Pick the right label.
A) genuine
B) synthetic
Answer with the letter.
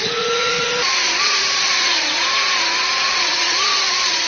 B